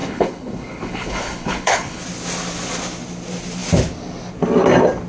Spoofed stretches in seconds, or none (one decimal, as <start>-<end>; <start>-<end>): 0.0-2.0